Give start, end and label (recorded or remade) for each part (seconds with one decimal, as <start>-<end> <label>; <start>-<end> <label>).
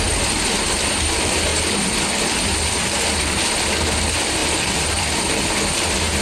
0.0-1.5 remade; 1.5-3.5 recorded; 3.5-6.2 remade